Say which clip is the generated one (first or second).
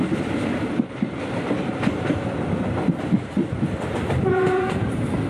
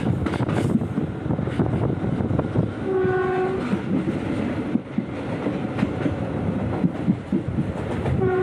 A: first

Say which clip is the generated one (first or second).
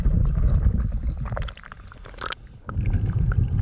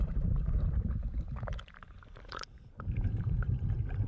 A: second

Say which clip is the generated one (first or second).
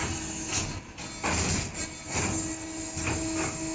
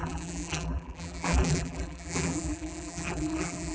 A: second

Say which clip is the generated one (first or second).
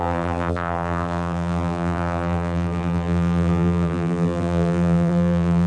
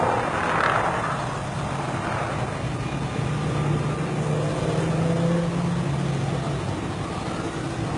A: first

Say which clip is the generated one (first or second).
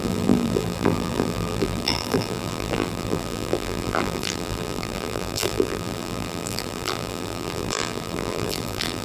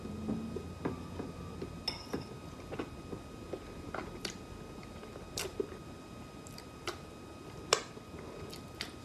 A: first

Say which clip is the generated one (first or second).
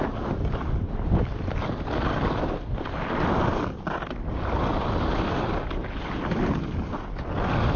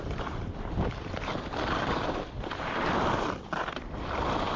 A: second